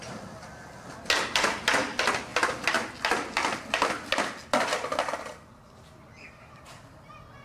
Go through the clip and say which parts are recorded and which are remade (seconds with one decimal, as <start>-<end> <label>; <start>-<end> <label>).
0.0-7.4 recorded